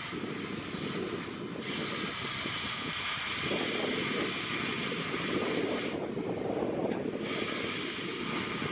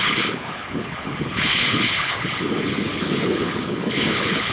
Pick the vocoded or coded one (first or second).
second